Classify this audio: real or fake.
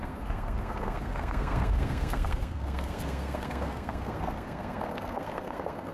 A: fake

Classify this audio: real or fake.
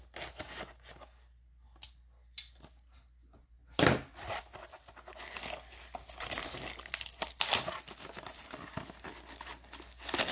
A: real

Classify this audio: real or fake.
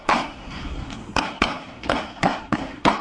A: fake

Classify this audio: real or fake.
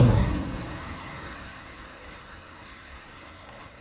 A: fake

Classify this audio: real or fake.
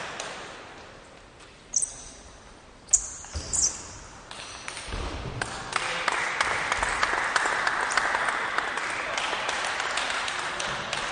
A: real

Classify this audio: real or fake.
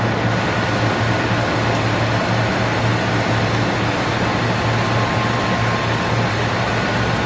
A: real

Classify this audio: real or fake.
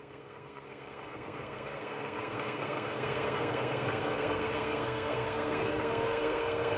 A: fake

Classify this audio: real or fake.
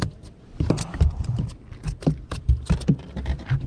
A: real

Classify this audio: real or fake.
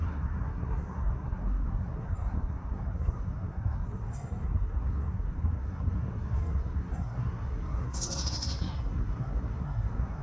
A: fake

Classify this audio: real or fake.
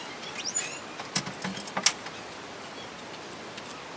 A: real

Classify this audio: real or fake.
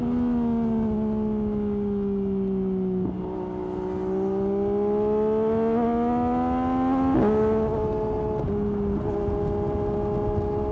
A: real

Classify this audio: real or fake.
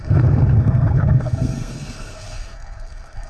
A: fake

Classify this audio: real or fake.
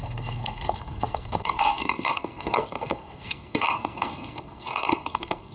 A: fake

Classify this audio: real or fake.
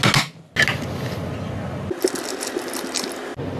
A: real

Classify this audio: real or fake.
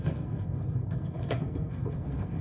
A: fake